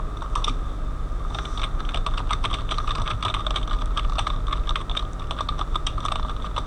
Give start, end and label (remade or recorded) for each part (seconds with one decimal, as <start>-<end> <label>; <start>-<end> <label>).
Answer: 0.0-6.7 recorded